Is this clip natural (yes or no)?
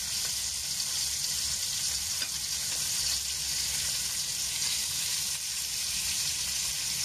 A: yes